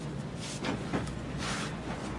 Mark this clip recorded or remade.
remade